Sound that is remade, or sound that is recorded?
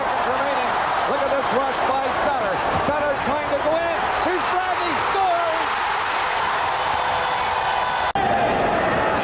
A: recorded